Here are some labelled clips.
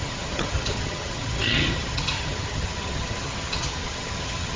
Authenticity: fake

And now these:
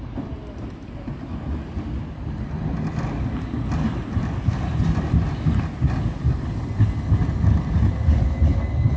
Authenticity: real